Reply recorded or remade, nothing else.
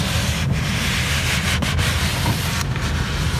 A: recorded